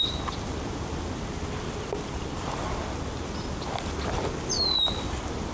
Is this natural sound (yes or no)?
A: yes